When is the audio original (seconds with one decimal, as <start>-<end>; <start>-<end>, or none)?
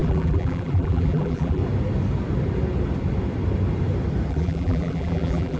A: 1.6-4.3